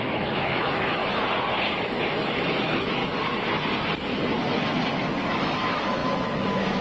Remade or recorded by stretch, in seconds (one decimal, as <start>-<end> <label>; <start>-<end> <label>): 0.0-1.0 remade; 1.0-1.8 recorded; 1.8-3.0 remade; 3.0-4.9 recorded; 4.9-6.8 remade